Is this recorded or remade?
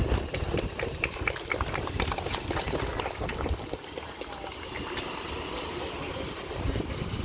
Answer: recorded